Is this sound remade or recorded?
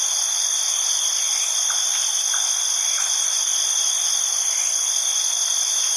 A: recorded